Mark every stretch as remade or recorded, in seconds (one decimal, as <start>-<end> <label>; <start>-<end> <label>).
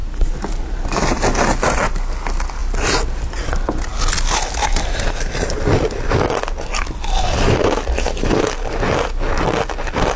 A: 0.0-10.2 recorded